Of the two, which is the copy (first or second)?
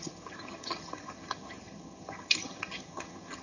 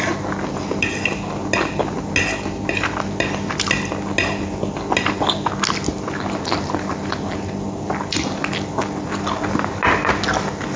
first